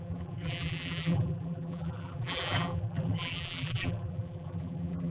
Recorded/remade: remade